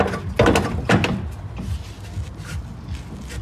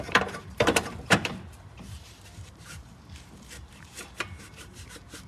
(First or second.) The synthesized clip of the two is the second